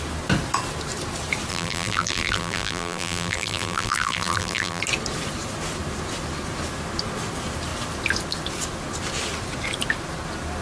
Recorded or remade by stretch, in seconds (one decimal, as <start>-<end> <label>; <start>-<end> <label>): 0.0-1.5 recorded; 1.5-4.8 remade; 4.8-10.6 recorded